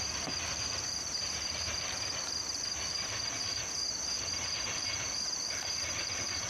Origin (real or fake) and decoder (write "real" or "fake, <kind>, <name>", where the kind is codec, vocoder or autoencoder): fake, vocoder, BigVGAN v2